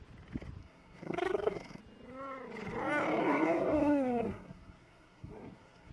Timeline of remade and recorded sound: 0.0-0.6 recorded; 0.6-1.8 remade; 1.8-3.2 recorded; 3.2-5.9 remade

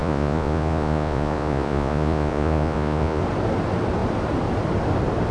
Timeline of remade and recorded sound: 0.0-3.2 remade; 3.2-5.3 recorded

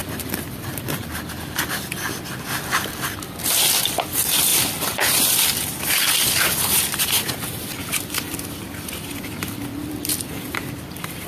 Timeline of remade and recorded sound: 0.0-11.3 remade

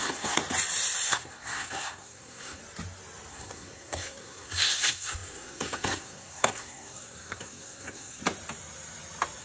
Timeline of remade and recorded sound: 0.0-0.4 remade; 0.4-1.1 recorded; 1.1-2.6 remade; 2.6-3.3 recorded; 3.3-8.2 remade; 8.2-9.4 recorded

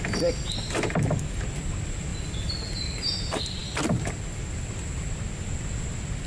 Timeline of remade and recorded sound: 0.0-6.3 recorded